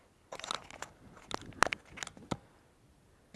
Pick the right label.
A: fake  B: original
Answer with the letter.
B